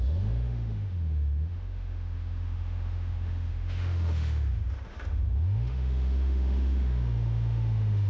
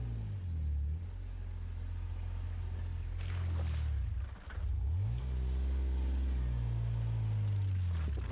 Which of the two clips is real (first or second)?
second